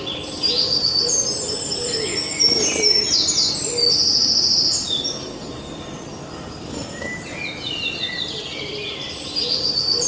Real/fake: real